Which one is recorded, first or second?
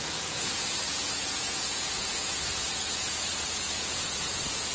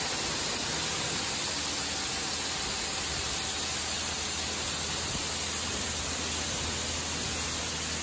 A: second